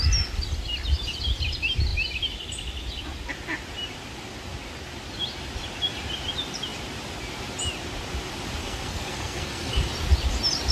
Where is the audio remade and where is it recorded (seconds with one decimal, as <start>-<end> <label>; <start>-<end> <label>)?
0.0-8.6 recorded; 8.6-9.9 remade; 9.9-10.7 recorded